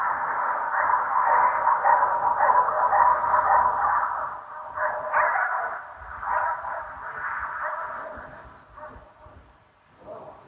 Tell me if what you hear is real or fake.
real